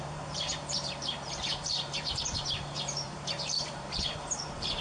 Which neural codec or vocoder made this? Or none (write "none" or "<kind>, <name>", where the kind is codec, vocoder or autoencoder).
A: vocoder, BigVGAN v2